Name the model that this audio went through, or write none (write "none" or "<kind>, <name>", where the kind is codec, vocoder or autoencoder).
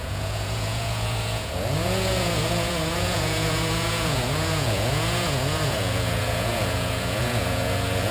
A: vocoder, Vocos